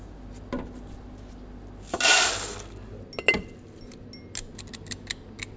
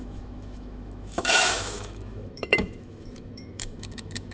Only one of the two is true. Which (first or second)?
first